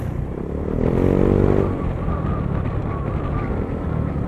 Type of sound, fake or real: real